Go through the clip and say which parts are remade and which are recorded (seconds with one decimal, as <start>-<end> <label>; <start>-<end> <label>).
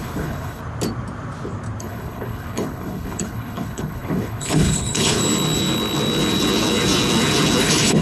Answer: 0.0-0.6 remade; 0.6-1.8 recorded; 1.8-5.2 remade; 5.2-7.6 recorded; 7.6-8.0 remade